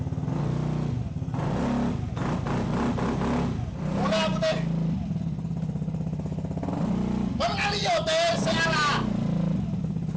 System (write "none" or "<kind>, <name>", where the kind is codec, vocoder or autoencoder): none